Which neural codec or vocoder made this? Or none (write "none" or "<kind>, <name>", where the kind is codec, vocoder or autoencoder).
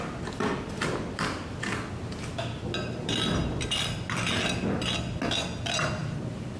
none